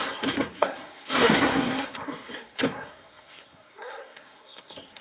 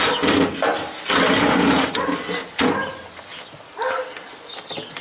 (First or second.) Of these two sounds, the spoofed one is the first